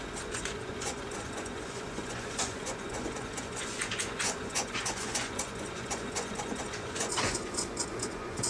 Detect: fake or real fake